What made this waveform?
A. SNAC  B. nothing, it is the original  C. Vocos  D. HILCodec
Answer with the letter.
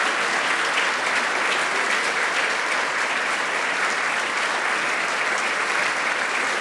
B